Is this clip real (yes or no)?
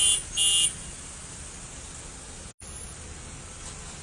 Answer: yes